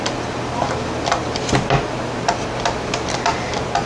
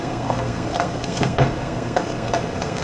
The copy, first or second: second